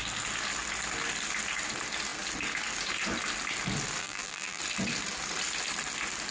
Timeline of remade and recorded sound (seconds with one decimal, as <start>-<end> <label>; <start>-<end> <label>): 0.0-4.0 recorded; 4.0-4.6 remade; 4.6-6.3 recorded